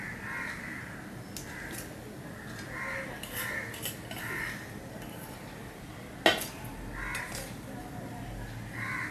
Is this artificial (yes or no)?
no